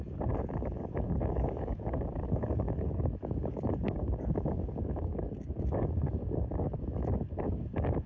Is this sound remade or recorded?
remade